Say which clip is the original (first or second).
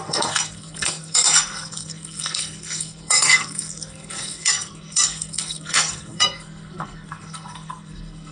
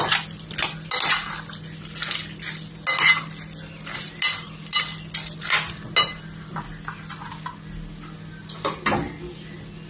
second